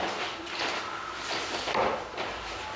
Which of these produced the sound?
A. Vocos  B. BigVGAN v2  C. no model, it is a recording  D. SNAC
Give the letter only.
B